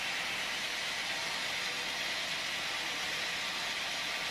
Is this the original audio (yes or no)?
yes